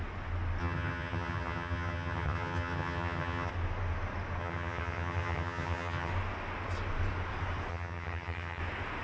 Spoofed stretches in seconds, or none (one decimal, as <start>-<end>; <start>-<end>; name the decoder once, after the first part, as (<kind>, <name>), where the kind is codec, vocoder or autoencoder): 0.6-3.5 (vocoder, HiFi-GAN); 4.4-6.1; 7.7-8.6

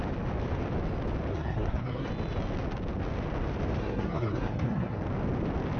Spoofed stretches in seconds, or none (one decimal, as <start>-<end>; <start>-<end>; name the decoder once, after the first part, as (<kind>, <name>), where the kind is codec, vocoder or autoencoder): 1.3-2.1 (codec, SNAC); 3.8-5.0

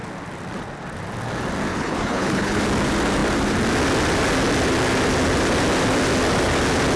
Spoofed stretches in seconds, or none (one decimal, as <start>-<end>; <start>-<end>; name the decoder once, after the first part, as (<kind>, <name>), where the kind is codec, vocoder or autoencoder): 1.7-2.6 (codec, HILCodec)